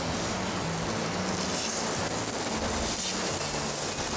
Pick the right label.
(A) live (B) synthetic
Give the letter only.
A